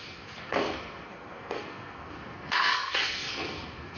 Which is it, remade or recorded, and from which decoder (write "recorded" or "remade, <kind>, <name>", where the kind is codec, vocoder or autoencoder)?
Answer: remade, codec, SNAC